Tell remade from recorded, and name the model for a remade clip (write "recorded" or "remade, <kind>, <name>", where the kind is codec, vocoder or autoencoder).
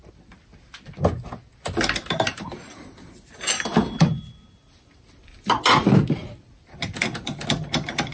recorded